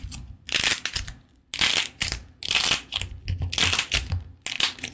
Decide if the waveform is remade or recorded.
recorded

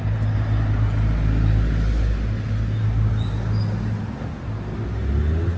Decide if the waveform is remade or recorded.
recorded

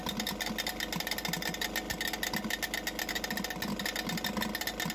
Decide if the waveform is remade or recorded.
recorded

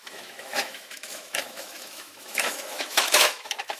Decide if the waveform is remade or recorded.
remade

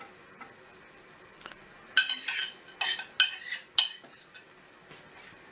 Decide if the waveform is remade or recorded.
recorded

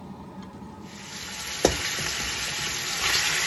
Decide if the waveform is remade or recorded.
recorded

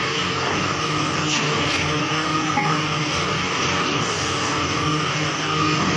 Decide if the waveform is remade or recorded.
remade